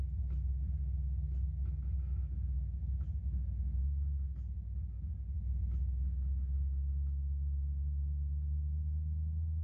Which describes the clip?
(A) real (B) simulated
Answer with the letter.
A